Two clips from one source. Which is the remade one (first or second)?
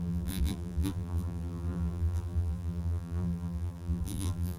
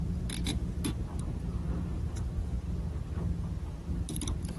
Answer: first